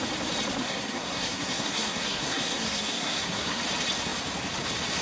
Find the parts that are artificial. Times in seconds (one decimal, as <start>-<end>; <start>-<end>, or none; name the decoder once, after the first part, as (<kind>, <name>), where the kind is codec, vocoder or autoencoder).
0.6-3.6 (codec, SNAC)